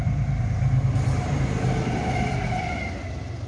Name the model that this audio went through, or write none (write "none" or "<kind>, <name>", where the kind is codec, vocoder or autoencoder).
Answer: vocoder, BigVGAN v2